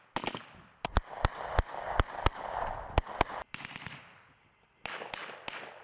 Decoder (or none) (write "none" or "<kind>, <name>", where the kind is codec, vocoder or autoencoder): none